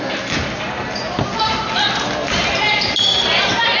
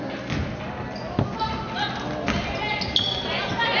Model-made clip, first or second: first